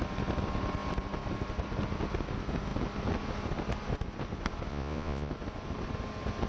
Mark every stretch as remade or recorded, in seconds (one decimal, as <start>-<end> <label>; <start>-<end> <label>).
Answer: 0.0-4.7 recorded; 4.7-5.3 remade; 5.3-6.5 recorded